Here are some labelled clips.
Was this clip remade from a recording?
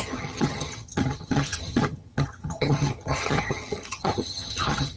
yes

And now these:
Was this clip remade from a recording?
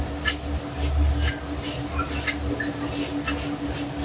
no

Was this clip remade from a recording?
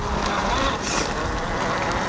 no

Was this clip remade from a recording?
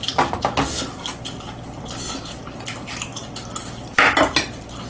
no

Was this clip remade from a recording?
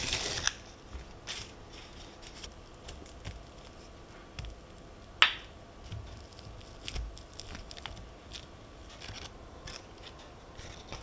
no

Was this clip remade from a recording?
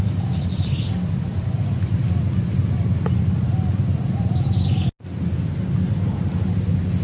no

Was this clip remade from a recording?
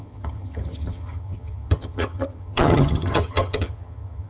yes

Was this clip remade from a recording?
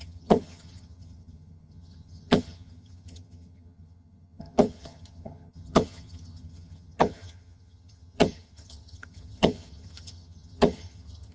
yes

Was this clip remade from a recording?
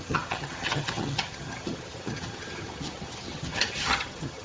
yes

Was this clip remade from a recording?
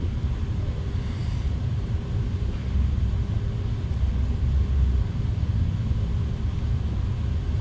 no